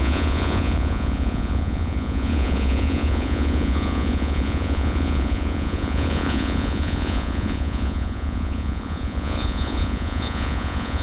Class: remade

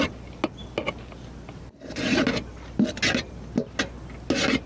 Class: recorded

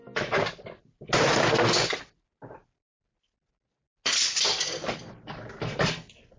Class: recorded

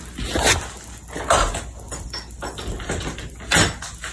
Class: recorded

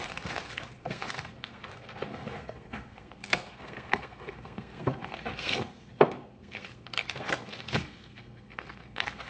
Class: remade